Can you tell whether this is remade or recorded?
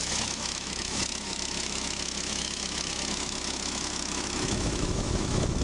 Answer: remade